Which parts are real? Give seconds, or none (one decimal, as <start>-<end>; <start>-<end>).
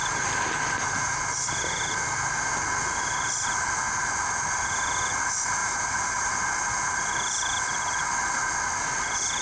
0.0-5.6; 6.3-9.4